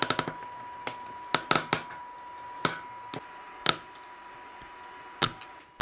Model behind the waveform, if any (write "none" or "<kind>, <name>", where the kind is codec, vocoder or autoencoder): none